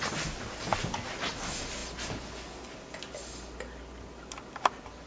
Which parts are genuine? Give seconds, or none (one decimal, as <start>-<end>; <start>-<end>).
0.0-5.1